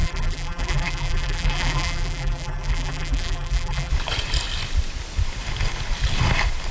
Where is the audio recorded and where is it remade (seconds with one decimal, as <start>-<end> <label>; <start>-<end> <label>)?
0.0-3.9 remade; 3.9-6.7 recorded